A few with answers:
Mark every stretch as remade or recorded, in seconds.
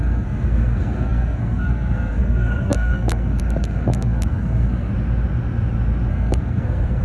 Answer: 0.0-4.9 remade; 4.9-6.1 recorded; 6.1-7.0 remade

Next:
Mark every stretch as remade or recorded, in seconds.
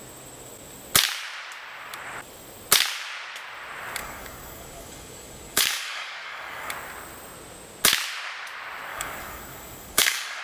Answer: 0.0-4.0 recorded; 4.0-6.7 remade; 6.7-8.9 recorded; 8.9-10.4 remade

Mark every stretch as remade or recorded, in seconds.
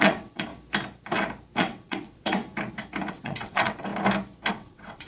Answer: 0.0-0.5 remade; 0.5-1.6 recorded; 1.6-2.4 remade; 2.4-3.1 recorded; 3.1-3.9 remade; 3.9-4.5 recorded; 4.5-5.1 remade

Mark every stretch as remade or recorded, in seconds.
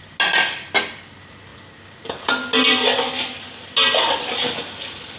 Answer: 0.0-5.2 recorded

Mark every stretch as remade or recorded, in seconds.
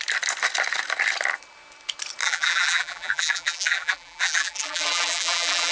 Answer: 0.0-2.2 recorded; 2.2-5.7 remade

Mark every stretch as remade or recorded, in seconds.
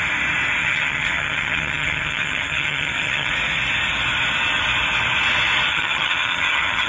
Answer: 0.0-0.6 recorded; 0.6-3.3 remade; 3.3-5.7 recorded; 5.7-6.9 remade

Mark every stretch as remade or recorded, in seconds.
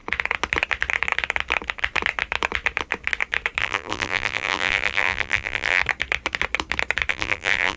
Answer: 0.0-3.6 recorded; 3.6-5.8 remade; 5.8-7.1 recorded; 7.1-7.8 remade